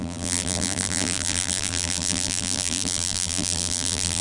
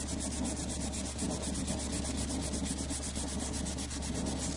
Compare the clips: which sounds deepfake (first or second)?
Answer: first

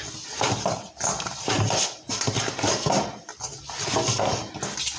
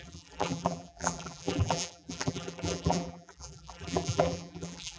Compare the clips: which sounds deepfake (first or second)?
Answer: second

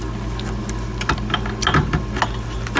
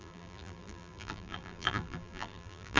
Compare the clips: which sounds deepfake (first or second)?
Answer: second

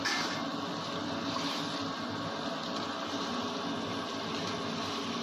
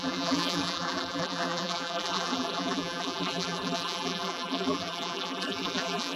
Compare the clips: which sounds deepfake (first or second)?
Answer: second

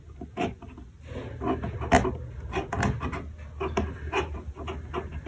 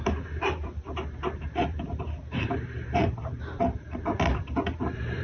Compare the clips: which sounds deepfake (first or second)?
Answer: second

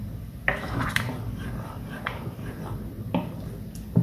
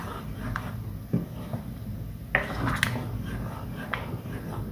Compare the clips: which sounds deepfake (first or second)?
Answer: first